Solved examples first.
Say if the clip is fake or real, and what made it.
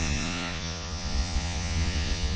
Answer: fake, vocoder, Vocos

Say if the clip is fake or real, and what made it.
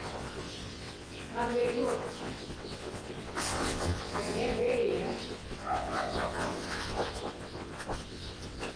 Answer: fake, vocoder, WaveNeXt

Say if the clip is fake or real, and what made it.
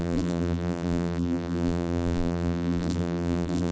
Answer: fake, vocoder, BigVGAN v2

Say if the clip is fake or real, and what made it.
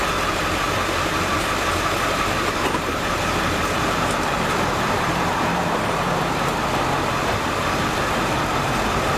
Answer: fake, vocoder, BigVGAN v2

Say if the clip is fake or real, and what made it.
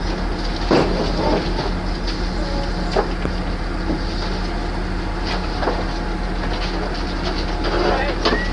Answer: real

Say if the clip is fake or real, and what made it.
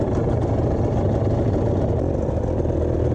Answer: real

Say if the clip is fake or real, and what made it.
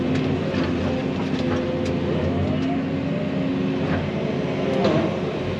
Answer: real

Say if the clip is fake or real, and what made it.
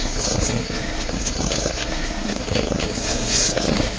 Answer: fake, codec, SNAC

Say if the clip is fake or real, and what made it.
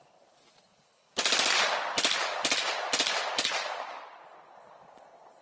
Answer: real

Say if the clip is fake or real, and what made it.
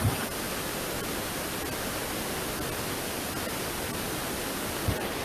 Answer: real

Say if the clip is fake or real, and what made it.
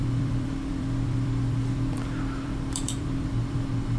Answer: fake, vocoder, BigVGAN v2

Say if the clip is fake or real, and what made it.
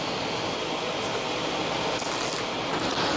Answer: real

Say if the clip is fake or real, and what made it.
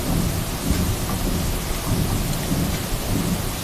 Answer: real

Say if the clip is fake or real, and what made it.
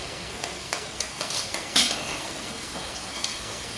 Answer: fake, codec, SNAC